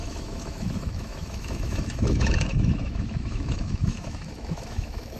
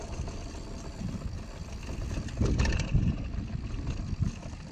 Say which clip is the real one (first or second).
second